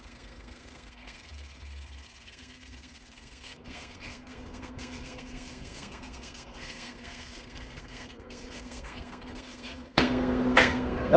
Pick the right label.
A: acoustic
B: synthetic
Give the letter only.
B